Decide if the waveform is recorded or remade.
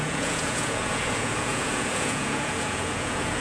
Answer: remade